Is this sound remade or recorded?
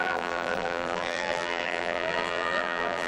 remade